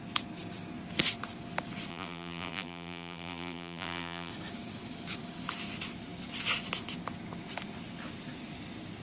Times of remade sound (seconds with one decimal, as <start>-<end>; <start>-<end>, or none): 1.9-4.3